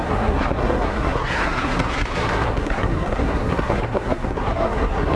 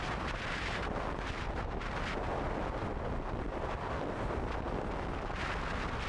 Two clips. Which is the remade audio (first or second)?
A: first